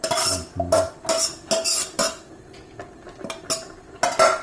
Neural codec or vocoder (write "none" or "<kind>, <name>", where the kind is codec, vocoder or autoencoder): none